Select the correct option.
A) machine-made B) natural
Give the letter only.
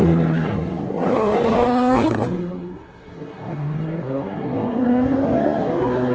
A